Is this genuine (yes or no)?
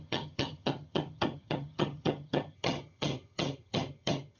no